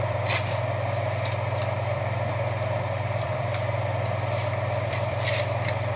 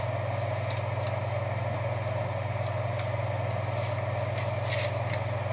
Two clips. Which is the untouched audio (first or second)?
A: second